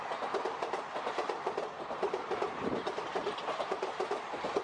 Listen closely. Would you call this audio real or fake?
real